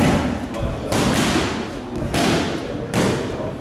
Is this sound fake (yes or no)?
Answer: no